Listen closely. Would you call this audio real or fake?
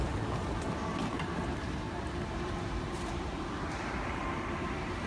fake